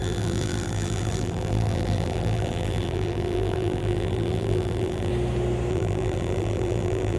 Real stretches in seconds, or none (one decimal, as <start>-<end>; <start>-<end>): 5.1-5.7